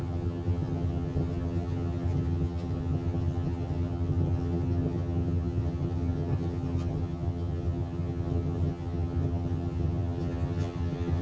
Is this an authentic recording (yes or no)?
no